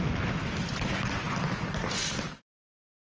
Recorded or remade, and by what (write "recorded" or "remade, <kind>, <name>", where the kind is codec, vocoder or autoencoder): recorded